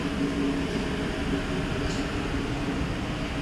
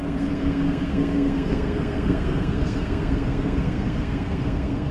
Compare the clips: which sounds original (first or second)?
first